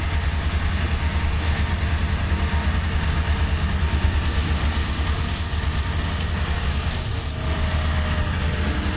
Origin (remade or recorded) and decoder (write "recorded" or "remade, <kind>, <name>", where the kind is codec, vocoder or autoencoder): recorded